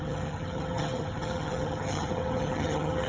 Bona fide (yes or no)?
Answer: no